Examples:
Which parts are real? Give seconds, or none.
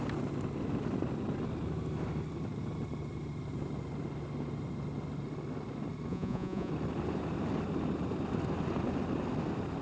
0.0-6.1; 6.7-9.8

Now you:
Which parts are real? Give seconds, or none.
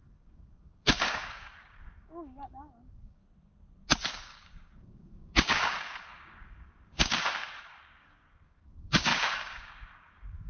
3.2-4.1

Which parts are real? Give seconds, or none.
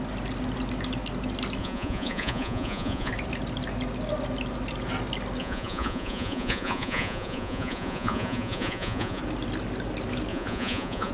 0.0-1.6; 3.1-5.4; 9.2-10.3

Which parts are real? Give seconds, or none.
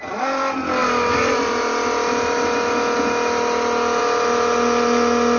0.0-5.4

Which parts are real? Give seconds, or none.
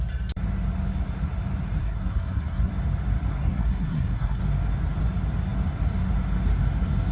0.0-1.8; 2.7-3.3; 4.4-7.1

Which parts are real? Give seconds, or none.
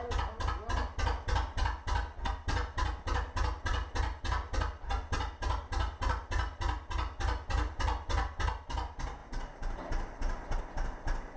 0.0-11.4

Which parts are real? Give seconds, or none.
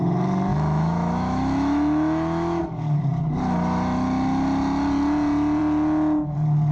0.0-0.5; 2.6-6.7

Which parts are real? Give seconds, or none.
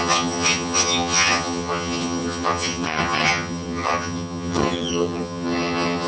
none